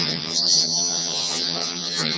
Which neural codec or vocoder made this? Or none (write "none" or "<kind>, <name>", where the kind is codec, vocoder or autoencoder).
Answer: vocoder, HiFi-GAN